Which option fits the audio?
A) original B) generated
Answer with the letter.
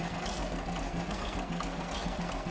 B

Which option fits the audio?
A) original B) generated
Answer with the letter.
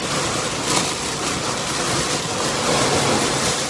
A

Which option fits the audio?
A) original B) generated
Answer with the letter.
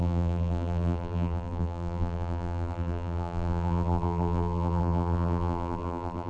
B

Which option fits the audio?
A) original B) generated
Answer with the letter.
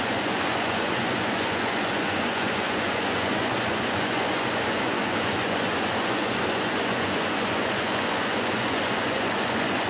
B